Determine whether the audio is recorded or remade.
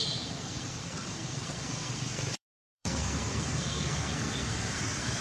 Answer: remade